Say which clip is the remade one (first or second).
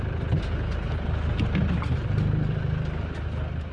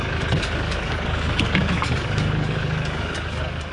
second